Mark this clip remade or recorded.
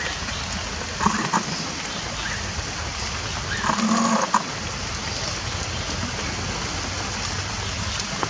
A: recorded